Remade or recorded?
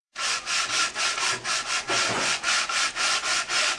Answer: remade